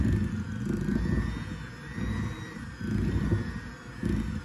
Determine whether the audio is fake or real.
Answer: real